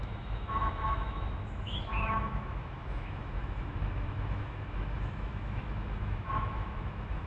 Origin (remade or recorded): remade